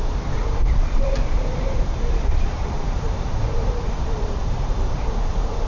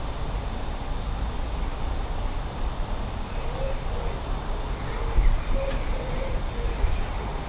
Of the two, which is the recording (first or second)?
second